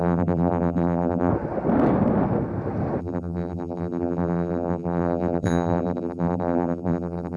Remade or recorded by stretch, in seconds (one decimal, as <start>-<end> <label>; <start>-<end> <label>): 0.0-1.3 remade; 1.3-3.0 recorded; 3.0-7.4 remade